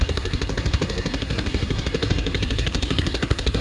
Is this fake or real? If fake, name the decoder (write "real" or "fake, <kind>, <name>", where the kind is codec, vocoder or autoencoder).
fake, codec, SNAC